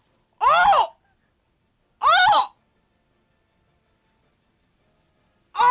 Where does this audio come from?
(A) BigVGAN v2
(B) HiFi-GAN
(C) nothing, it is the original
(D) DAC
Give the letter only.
C